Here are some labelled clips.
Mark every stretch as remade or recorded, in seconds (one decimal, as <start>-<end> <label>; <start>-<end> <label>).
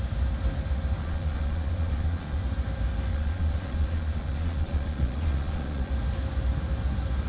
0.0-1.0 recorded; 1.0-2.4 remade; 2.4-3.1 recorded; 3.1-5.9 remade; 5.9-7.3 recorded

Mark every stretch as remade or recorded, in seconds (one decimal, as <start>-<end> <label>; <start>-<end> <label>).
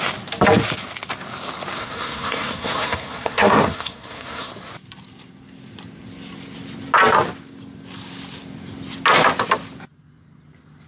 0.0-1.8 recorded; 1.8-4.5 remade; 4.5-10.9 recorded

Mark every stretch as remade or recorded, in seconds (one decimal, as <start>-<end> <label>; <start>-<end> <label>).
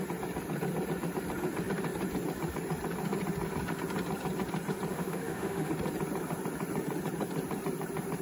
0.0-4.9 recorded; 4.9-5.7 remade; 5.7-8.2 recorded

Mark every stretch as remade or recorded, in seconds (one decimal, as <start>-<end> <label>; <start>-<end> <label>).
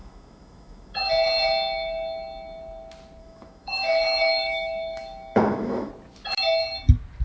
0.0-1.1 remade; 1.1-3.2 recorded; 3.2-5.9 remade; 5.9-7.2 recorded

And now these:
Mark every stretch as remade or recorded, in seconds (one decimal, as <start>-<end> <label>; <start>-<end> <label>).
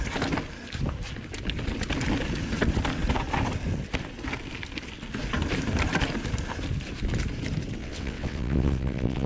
0.0-7.8 recorded; 7.8-9.3 remade